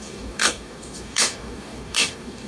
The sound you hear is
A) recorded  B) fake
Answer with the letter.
B